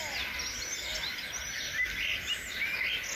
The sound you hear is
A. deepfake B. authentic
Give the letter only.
B